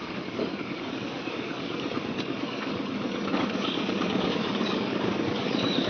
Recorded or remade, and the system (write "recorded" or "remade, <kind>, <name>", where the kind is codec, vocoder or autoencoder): remade, codec, DAC